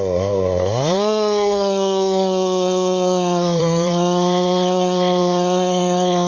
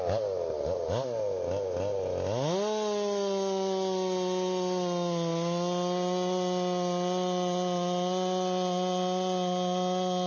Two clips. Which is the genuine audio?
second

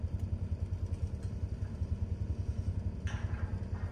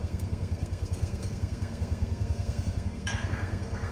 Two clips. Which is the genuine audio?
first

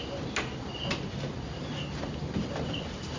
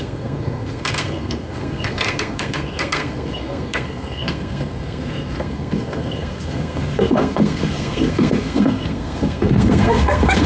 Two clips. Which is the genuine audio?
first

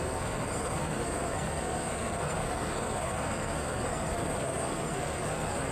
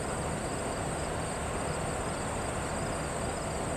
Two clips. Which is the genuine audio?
second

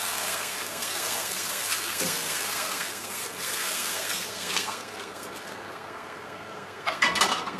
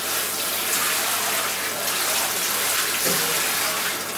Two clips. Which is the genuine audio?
second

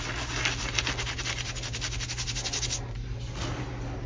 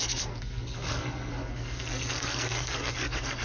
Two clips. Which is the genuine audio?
first